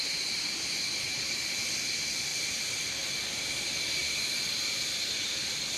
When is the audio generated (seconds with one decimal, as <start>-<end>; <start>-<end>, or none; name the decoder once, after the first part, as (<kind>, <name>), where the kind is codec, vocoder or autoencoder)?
none